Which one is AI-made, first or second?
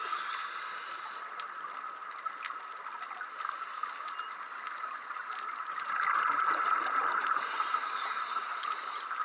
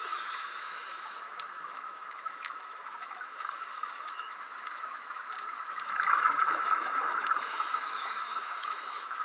second